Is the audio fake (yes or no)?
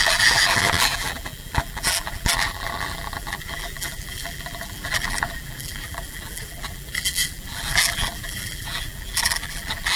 yes